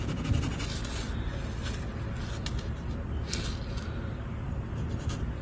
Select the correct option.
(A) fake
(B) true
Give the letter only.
A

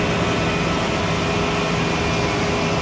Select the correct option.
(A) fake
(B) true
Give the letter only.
B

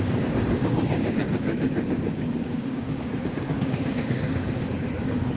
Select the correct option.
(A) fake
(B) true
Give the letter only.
A